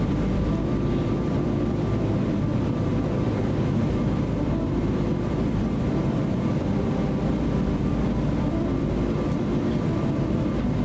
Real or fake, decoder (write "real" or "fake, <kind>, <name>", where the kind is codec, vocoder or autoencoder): fake, vocoder, BigVGAN v2